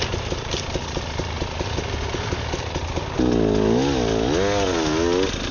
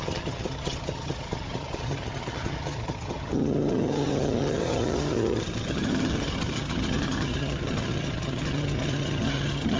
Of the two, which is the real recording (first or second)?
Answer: first